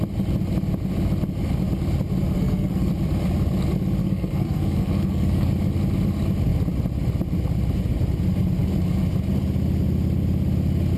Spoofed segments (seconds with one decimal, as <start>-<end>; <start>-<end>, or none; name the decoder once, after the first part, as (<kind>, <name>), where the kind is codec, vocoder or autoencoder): 2.3-2.9 (codec, SNAC); 4.0-5.5